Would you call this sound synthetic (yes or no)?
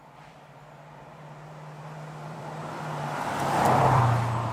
yes